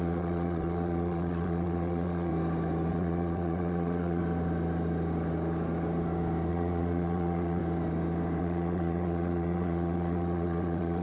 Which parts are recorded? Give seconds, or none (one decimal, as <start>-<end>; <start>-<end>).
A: 2.3-2.9; 4.2-6.5; 7.6-8.4